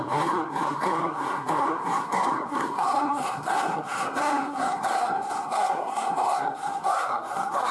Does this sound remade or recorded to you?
remade